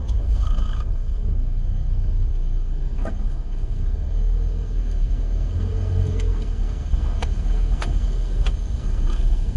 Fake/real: fake